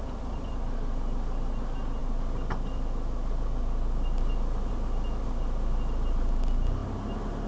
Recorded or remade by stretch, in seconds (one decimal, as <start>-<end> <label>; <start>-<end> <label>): 0.0-7.5 recorded